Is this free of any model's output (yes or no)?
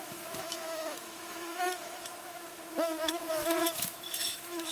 no